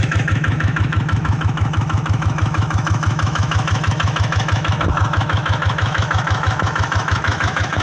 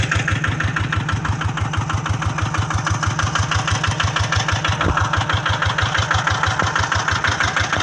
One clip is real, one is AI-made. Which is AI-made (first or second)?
first